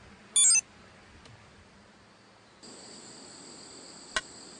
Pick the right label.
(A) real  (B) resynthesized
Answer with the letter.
A